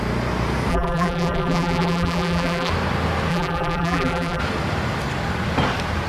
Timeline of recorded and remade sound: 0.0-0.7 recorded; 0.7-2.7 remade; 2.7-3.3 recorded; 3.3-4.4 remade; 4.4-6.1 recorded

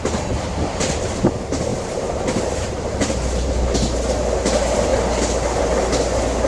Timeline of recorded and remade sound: 0.0-0.5 recorded; 0.5-1.2 remade; 1.2-1.7 recorded; 1.7-4.2 remade; 4.2-6.5 recorded

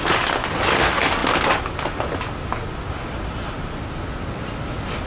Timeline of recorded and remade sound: 0.0-5.1 recorded

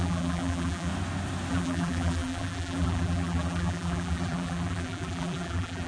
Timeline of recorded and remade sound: 0.0-0.9 remade; 0.9-1.5 recorded; 1.5-5.9 remade

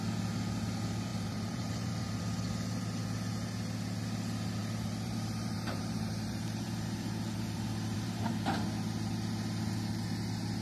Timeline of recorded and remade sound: 0.0-1.1 recorded; 1.1-2.2 remade; 2.2-4.6 recorded; 4.6-8.3 remade; 8.3-10.6 recorded

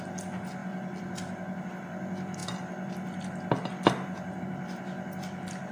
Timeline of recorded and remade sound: 0.0-0.6 recorded; 0.6-1.7 remade; 1.7-5.7 recorded

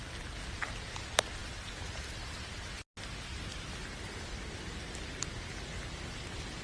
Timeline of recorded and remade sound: 0.0-3.5 recorded; 3.5-6.6 remade

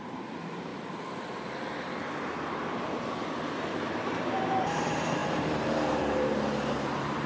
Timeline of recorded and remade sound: 0.0-0.7 remade; 0.7-3.3 recorded; 3.3-7.3 remade